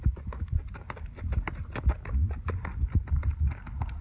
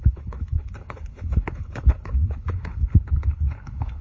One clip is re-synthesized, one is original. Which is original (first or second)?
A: first